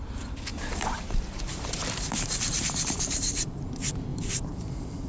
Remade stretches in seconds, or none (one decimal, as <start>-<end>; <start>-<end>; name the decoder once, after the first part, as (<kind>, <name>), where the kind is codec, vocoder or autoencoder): 0.5-3.6 (vocoder, BigVGAN v2); 4.1-5.1